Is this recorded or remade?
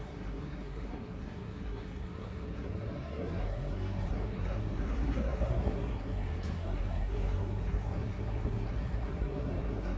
remade